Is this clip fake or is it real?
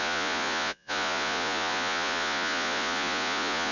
fake